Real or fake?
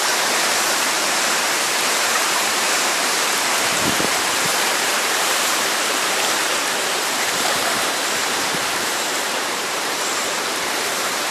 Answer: fake